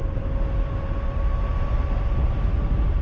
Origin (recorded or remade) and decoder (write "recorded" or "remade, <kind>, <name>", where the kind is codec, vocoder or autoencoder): recorded